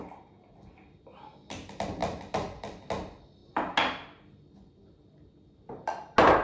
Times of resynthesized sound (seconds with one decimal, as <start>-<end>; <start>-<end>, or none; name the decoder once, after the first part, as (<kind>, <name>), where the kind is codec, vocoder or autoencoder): none